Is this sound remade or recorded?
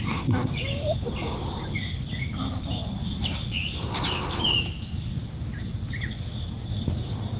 recorded